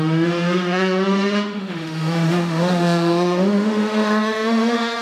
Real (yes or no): no